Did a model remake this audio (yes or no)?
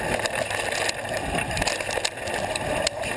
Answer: yes